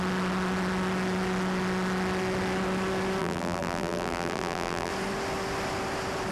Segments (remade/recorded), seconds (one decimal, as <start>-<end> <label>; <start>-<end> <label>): 0.0-3.2 recorded; 3.2-4.9 remade; 4.9-6.3 recorded